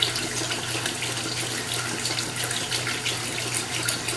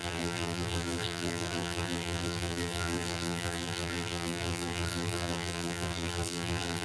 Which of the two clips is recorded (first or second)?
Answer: first